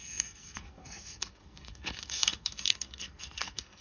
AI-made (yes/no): yes